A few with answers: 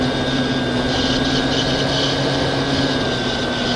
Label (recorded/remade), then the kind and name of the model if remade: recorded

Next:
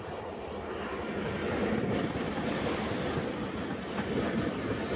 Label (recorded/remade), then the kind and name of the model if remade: recorded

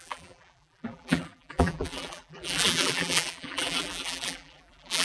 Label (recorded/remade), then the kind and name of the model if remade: remade, vocoder, BigVGAN v2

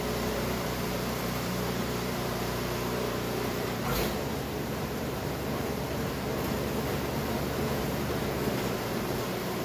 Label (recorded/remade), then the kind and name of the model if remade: remade, vocoder, BigVGAN v2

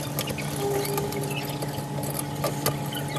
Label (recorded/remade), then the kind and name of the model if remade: recorded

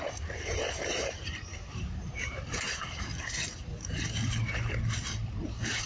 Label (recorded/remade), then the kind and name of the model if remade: remade, vocoder, BigVGAN v2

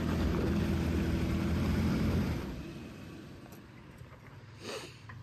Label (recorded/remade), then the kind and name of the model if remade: remade, vocoder, BigVGAN v2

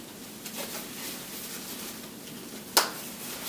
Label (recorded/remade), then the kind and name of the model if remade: recorded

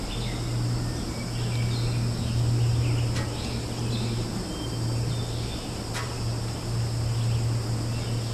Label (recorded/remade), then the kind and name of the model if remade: recorded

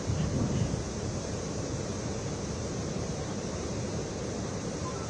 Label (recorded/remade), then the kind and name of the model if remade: remade, vocoder, BigVGAN v2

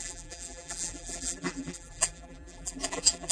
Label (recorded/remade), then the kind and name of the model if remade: remade, vocoder, BigVGAN v2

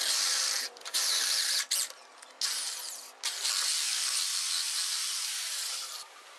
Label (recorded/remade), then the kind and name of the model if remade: recorded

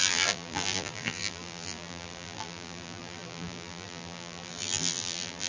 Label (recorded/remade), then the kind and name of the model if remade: remade, vocoder, BigVGAN v2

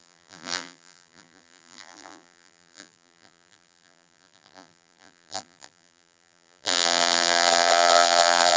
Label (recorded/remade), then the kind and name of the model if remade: remade, vocoder, BigVGAN v2